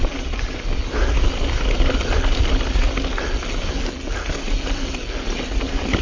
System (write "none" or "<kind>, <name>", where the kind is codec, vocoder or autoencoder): none